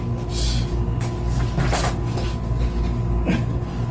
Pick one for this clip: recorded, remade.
recorded